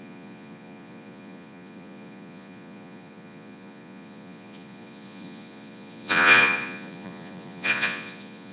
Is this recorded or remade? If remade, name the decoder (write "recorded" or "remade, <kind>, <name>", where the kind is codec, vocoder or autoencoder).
remade, vocoder, Vocos